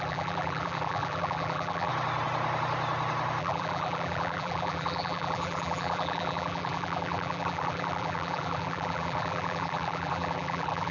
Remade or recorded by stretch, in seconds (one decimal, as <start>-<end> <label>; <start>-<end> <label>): 0.0-1.9 remade; 1.9-3.4 recorded; 3.4-10.9 remade